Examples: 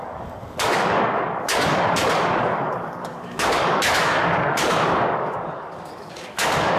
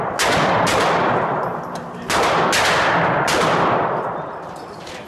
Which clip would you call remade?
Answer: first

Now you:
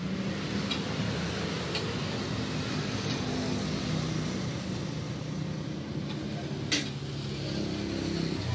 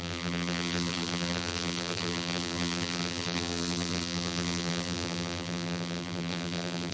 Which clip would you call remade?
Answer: second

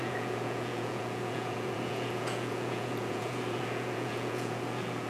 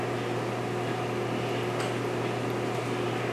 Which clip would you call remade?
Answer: first